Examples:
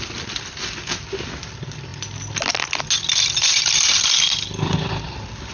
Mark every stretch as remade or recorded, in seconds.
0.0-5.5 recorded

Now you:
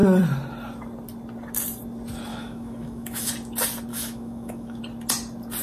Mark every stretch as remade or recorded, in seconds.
0.0-2.3 recorded; 2.3-3.3 remade; 3.3-3.9 recorded; 3.9-4.8 remade; 4.8-5.6 recorded

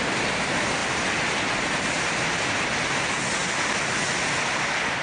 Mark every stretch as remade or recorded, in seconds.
0.0-5.0 recorded

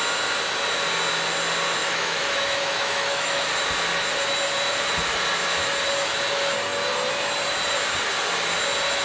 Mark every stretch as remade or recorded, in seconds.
0.0-1.8 recorded; 1.8-3.5 remade; 3.5-9.0 recorded

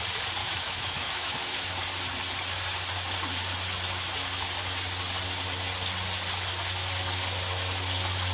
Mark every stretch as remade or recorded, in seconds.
0.0-0.4 recorded; 0.4-1.7 remade; 1.7-8.3 recorded